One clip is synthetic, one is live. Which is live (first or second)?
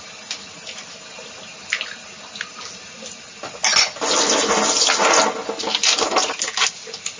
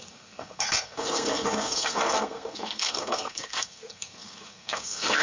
first